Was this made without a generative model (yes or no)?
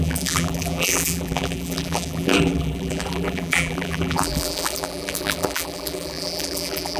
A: no